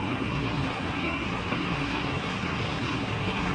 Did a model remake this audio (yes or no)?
yes